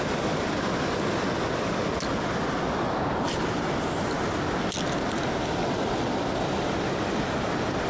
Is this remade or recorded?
recorded